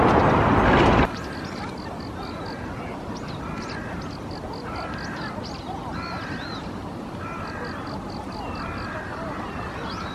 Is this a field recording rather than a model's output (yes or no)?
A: yes